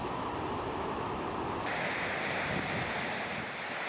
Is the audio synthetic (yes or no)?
no